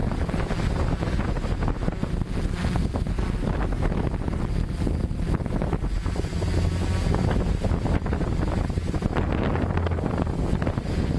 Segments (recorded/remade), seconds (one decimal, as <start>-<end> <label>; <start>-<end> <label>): 0.0-11.2 recorded